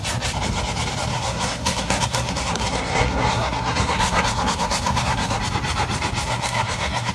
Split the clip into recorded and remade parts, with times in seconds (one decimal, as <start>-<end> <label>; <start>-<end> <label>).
0.0-1.1 recorded; 1.1-5.4 remade; 5.4-6.2 recorded; 6.2-7.1 remade